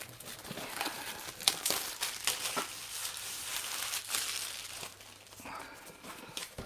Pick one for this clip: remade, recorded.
remade